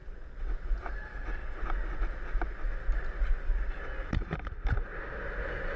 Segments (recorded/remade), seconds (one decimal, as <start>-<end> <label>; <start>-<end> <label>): 0.0-5.8 recorded